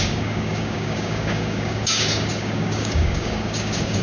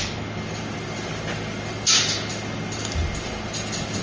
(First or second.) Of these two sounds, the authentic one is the second